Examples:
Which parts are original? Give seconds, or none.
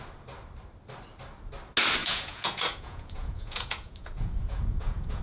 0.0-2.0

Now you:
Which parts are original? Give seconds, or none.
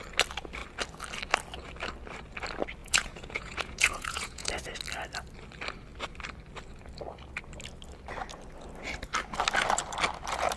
0.0-2.8; 4.5-10.6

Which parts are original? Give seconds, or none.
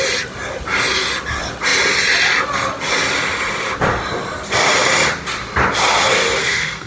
0.0-6.4